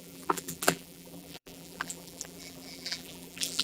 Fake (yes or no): yes